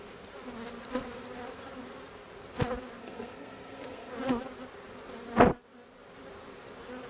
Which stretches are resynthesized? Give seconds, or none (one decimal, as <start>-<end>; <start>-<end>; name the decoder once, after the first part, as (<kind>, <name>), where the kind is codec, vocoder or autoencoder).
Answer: 3.0-4.1 (codec, SNAC)